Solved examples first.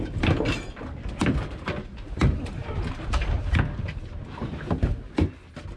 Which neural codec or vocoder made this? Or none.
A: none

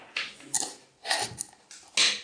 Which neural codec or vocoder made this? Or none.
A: none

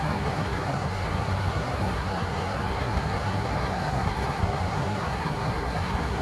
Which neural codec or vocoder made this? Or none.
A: codec, SNAC